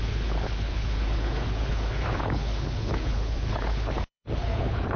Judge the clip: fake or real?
fake